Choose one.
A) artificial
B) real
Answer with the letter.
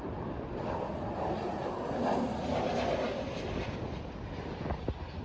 B